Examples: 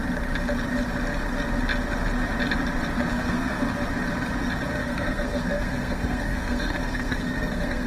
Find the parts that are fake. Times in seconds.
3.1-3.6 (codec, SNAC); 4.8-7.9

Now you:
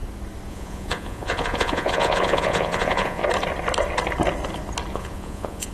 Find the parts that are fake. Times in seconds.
0.5-3.2 (vocoder, Vocos); 4.9-5.7